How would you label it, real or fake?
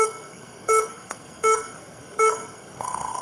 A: fake